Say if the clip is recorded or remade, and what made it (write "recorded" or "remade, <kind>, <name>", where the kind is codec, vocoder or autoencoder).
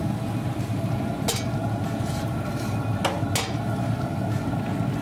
recorded